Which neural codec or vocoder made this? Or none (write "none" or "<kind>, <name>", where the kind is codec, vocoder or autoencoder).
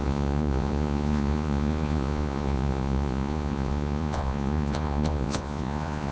vocoder, Vocos